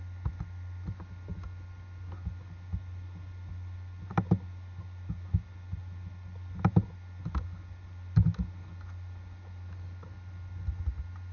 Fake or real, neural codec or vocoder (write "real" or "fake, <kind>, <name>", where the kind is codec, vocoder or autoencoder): real